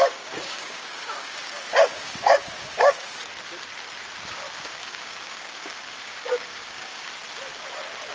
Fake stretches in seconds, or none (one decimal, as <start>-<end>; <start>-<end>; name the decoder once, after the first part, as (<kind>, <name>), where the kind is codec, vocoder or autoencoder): 0.0-3.2 (codec, DAC); 4.6-7.1